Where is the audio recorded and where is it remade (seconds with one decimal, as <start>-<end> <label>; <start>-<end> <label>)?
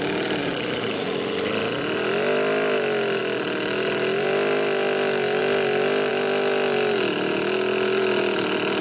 0.0-8.8 recorded